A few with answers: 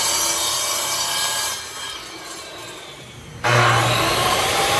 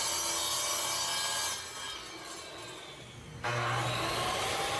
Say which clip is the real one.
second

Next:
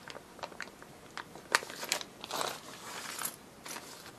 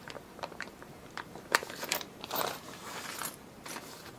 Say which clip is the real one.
first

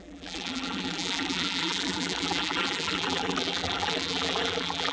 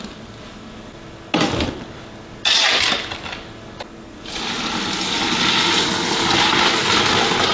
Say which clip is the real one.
second